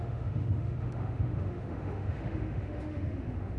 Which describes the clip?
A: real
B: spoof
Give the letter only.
B